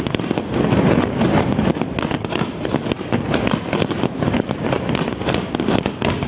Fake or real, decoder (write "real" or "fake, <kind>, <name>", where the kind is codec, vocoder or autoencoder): real